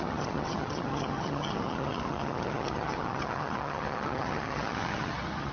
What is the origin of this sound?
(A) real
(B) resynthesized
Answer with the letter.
B